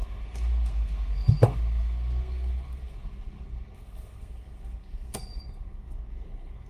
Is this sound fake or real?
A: fake